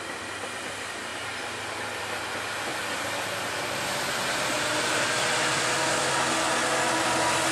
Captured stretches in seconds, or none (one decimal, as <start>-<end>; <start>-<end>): 0.0-7.5